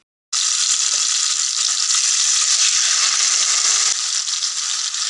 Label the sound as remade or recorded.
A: recorded